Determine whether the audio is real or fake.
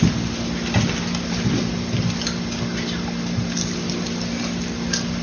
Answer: real